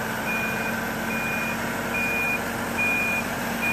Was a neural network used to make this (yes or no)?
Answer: no